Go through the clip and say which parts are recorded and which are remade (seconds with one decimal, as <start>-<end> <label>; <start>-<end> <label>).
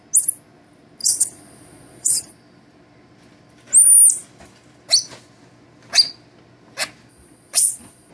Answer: 0.0-1.0 recorded; 1.0-2.3 remade; 2.3-7.1 recorded; 7.1-8.1 remade